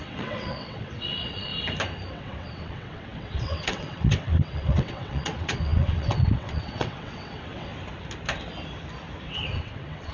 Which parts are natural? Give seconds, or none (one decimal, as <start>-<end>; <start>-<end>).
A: 1.5-2.1; 7.7-9.2